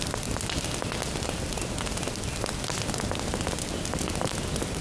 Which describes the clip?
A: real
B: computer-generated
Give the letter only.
A